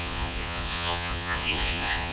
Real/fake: fake